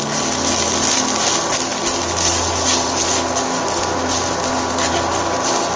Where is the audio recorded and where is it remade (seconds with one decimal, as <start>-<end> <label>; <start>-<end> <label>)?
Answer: 0.0-5.8 recorded